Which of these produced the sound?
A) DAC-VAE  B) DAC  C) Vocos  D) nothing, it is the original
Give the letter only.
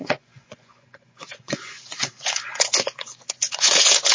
C